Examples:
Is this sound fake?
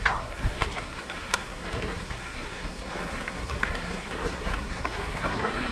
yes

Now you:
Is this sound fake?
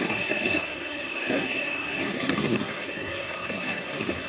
yes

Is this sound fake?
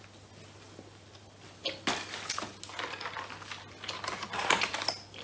no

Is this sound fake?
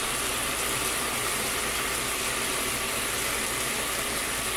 no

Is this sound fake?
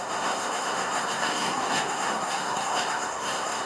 yes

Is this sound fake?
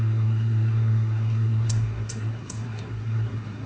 yes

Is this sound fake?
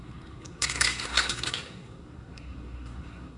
yes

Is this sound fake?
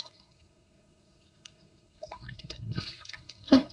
yes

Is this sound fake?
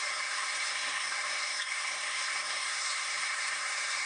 yes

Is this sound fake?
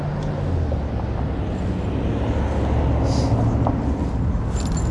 no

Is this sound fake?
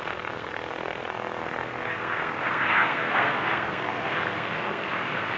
yes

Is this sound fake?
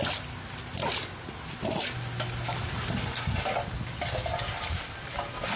no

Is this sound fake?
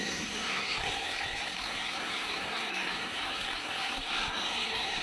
yes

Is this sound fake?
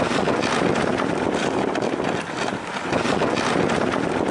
no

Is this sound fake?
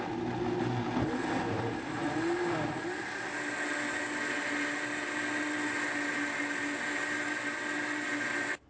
no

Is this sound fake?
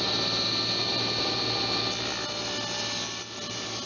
no